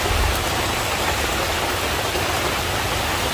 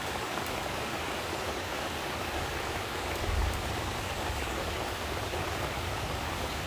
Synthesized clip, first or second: second